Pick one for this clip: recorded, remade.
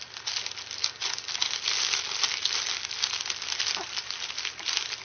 recorded